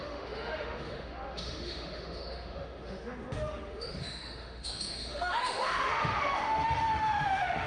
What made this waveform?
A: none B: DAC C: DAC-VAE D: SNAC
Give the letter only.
C